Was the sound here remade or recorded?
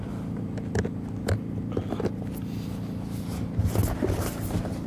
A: recorded